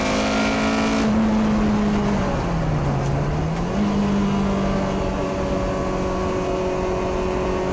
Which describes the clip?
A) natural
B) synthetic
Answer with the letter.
A